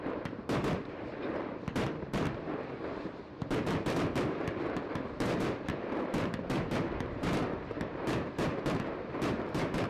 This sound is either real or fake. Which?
fake